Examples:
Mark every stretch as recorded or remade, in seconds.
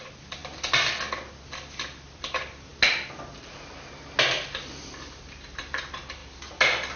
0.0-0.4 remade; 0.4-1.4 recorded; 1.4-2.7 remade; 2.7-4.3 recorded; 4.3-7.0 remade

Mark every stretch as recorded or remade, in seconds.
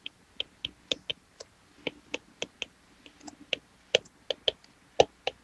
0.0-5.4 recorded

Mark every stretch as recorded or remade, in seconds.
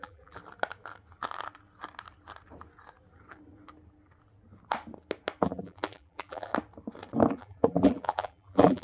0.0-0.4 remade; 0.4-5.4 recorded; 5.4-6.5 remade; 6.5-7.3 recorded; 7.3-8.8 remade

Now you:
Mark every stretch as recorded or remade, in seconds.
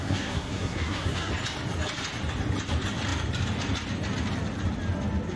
0.0-1.3 remade; 1.3-5.4 recorded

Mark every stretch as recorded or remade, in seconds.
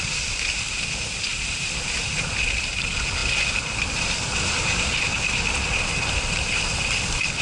0.0-7.4 recorded